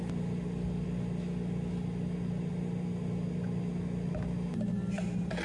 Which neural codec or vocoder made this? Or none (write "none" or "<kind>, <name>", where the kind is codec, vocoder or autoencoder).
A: none